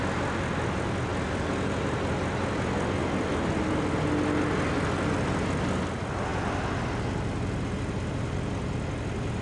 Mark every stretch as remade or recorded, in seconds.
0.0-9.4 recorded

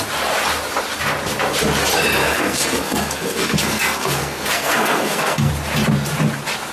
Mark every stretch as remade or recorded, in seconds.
0.0-2.2 recorded; 2.2-5.5 remade; 5.5-6.7 recorded

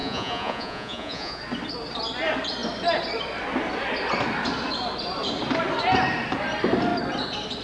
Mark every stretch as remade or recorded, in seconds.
0.0-1.4 remade; 1.4-7.6 recorded

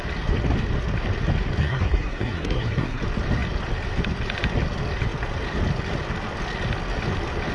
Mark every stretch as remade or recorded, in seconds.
0.0-1.6 recorded; 1.6-3.0 remade; 3.0-7.5 recorded

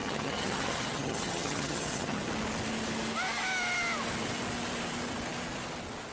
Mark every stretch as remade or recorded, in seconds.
0.0-2.3 remade; 2.3-6.1 recorded

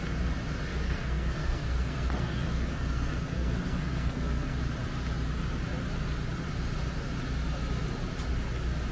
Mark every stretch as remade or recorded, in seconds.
0.0-0.7 recorded; 0.7-4.6 remade; 4.6-8.9 recorded